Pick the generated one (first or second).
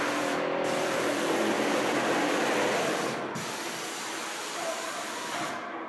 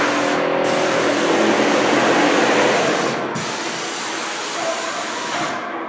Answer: first